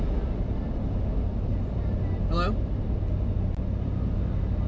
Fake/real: real